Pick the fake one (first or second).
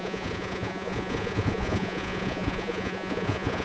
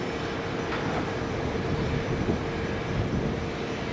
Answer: first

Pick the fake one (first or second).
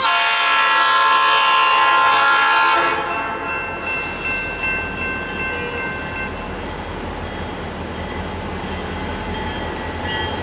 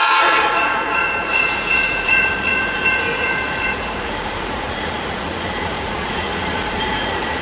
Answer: second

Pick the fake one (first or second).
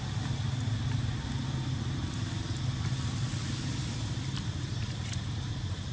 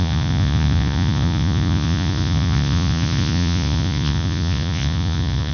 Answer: second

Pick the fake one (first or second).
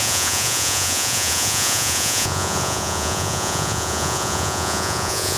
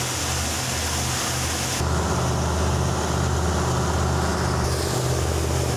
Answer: first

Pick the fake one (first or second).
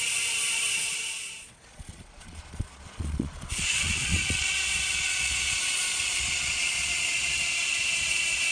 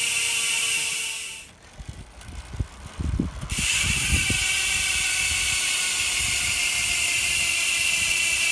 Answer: first